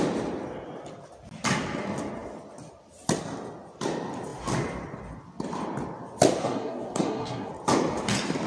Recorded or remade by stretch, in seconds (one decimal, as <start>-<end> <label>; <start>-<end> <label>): 0.0-6.4 recorded; 6.4-7.5 remade; 7.5-8.5 recorded